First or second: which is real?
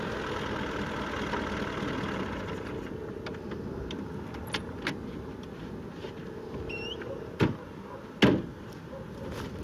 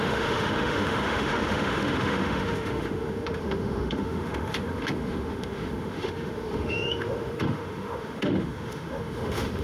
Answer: first